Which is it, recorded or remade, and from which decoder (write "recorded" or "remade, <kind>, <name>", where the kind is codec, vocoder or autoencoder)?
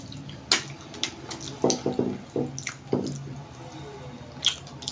recorded